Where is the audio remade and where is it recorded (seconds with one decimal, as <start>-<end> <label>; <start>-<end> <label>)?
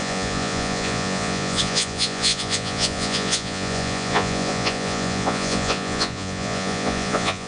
0.0-7.5 remade